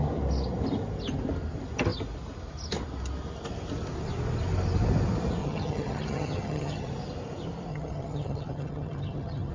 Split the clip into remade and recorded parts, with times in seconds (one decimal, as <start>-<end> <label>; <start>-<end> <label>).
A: 0.0-5.4 recorded; 5.4-6.9 remade; 6.9-7.7 recorded; 7.7-9.5 remade